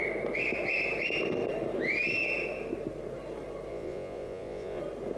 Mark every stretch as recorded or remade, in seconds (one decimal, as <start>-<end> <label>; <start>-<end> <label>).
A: 0.0-3.7 recorded; 3.7-4.8 remade; 4.8-5.2 recorded